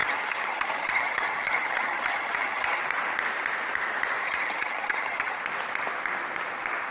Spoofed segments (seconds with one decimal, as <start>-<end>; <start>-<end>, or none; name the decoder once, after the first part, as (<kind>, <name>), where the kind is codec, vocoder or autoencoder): 0.0-2.8 (vocoder, HiFi-GAN); 4.2-5.4